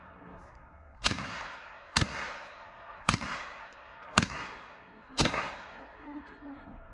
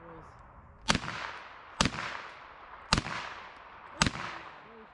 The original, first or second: second